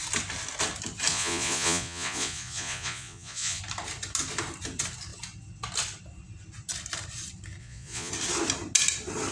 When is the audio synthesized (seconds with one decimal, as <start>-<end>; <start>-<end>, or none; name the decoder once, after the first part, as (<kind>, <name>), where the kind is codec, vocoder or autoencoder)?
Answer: 1.1-3.6 (vocoder, Vocos); 7.6-8.1